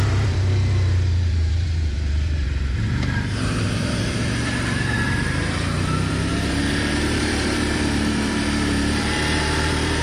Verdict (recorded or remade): remade